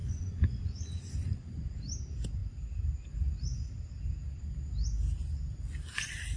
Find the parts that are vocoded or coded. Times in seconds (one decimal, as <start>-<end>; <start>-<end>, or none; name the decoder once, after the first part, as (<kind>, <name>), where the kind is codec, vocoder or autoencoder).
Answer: 0.0-0.6 (vocoder, Vocos)